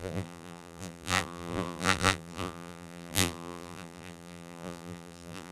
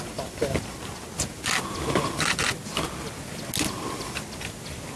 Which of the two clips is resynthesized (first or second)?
first